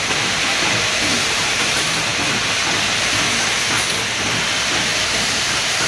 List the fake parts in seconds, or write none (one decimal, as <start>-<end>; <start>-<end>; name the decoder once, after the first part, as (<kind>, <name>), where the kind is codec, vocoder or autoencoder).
0.0-2.1 (vocoder, BigVGAN v2); 4.2-5.9